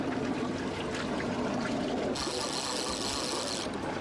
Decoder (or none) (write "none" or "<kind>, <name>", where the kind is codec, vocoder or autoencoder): none